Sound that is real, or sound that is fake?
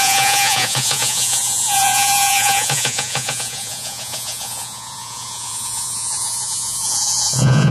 fake